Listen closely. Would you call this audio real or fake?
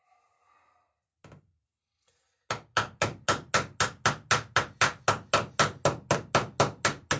real